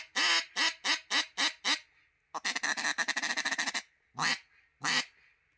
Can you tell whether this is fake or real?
real